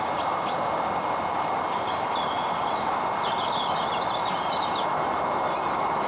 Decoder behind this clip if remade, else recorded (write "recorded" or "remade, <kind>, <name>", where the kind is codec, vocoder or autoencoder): recorded